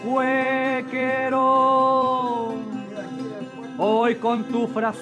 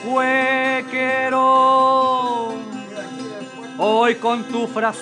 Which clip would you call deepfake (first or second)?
first